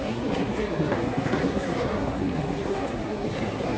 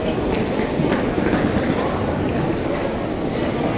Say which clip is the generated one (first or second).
first